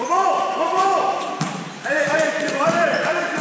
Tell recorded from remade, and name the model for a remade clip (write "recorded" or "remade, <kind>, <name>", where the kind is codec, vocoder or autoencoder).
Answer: remade, vocoder, BigVGAN v2